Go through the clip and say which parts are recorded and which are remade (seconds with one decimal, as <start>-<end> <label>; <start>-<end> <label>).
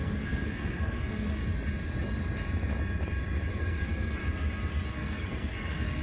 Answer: 0.0-1.4 remade; 1.4-3.5 recorded; 3.5-4.2 remade; 4.2-4.9 recorded; 4.9-6.0 remade